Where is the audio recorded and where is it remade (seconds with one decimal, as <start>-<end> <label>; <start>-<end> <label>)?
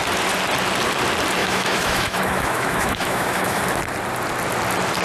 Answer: 0.0-1.4 recorded; 1.4-3.6 remade; 3.6-5.0 recorded